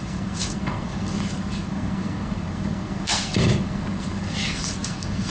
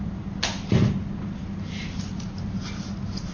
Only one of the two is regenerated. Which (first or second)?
first